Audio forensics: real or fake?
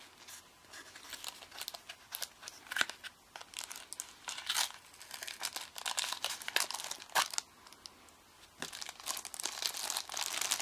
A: real